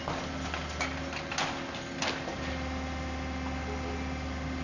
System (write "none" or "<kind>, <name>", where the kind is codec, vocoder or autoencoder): none